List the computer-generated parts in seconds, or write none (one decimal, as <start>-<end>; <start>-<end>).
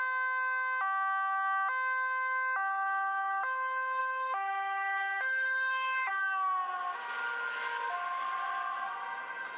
4.0-6.1